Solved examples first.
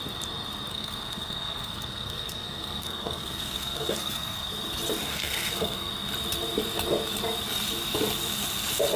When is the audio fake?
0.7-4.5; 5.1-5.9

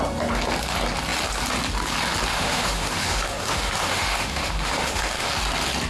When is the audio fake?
2.3-5.3

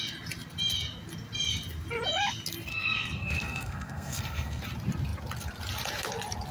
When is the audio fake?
2.7-4.6

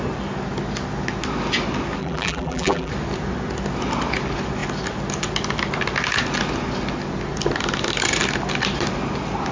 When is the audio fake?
2.0-2.9

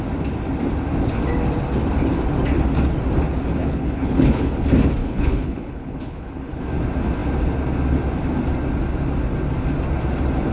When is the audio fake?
3.6-4.5; 5.0-6.6